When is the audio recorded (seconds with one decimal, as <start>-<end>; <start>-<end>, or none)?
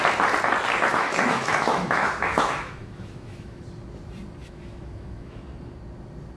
0.0-0.9; 3.6-4.4; 5.4-6.4